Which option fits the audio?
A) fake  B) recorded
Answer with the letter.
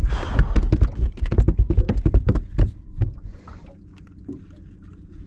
B